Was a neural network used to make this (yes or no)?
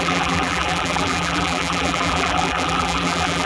yes